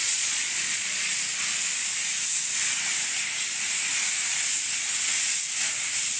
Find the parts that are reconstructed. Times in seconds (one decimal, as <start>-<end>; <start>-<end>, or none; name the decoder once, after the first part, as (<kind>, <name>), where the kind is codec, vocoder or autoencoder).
0.0-1.2 (vocoder, Vocos)

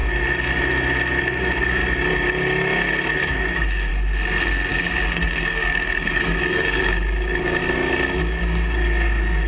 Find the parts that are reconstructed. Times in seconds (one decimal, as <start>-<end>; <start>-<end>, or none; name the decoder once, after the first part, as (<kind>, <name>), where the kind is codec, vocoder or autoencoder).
1.2-1.8 (codec, DAC); 3.2-3.9; 4.7-7.6; 8.2-9.5

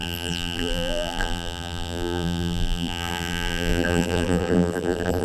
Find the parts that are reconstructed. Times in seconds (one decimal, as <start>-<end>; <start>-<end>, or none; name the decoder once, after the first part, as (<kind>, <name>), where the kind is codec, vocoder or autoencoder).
0.0-5.2 (vocoder, BigVGAN v2)

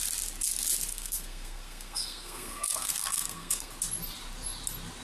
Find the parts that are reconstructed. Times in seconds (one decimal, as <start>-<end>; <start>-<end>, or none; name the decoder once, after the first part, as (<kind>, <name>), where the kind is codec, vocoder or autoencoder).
0.9-3.7 (codec, SNAC)

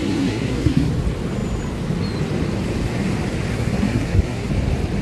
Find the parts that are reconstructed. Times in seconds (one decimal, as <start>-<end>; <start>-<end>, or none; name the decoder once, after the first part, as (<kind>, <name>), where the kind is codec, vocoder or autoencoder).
0.0-0.9 (codec, SNAC); 3.5-4.5

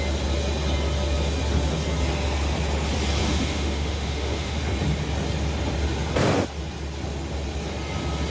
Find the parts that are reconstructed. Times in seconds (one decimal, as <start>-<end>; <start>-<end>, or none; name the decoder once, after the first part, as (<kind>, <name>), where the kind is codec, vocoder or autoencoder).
3.2-4.6 (autoencoder, DAC-VAE)

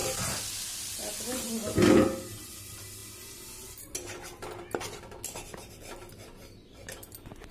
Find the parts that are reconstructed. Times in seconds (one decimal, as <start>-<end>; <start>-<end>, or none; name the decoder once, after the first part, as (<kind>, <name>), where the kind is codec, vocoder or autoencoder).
none

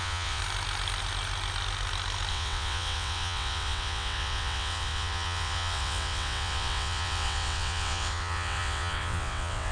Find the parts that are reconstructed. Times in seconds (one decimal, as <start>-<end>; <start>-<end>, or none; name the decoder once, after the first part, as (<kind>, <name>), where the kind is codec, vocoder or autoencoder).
0.0-0.4 (vocoder, WaveNeXt); 2.3-9.7